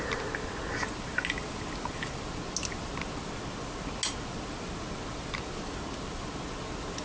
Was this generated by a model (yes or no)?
no